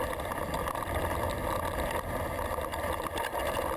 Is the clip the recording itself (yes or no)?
yes